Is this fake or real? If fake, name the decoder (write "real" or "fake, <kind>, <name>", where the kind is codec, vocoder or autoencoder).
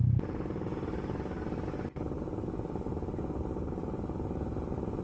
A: real